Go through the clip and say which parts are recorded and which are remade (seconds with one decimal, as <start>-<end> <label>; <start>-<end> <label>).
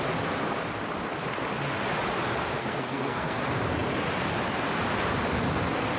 0.0-2.6 recorded; 2.6-3.4 remade; 3.4-6.0 recorded